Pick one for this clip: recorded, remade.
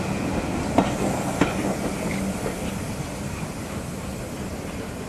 recorded